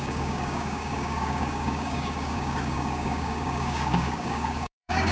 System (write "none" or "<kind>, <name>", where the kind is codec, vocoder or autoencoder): codec, DAC